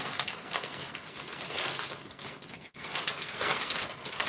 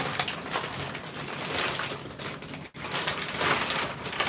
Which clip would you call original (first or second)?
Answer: second